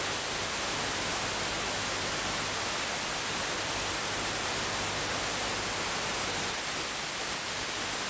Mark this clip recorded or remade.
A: recorded